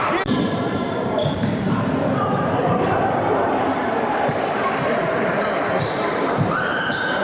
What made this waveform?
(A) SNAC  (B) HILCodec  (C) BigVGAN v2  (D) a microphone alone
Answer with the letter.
C